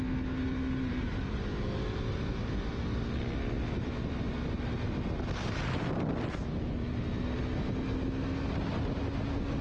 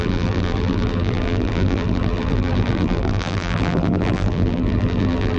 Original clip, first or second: first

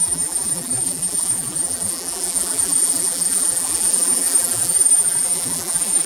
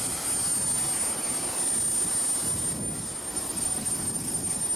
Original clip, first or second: second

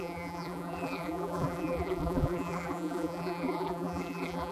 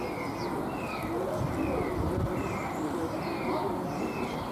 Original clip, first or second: second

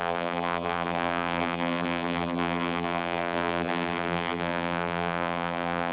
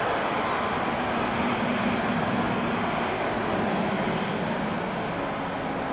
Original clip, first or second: second